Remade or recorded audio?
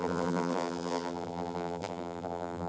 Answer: remade